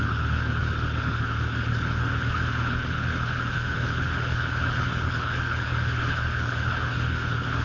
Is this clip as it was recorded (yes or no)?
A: no